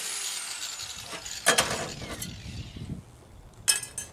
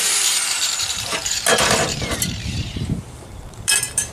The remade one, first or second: second